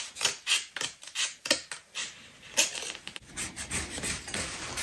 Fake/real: real